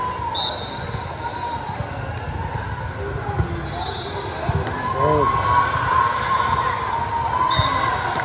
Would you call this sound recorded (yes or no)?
yes